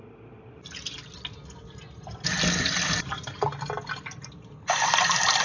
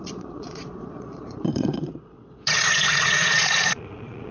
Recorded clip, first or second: first